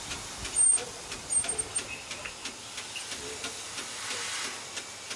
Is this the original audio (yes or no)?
no